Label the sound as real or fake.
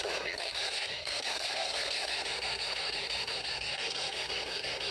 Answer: fake